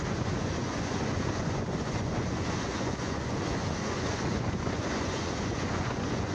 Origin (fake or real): fake